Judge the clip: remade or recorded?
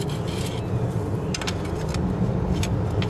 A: recorded